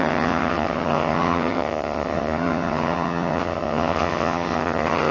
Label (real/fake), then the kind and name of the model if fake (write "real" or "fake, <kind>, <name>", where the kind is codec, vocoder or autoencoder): fake, vocoder, HiFi-GAN